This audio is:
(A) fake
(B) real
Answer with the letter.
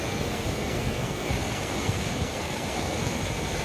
A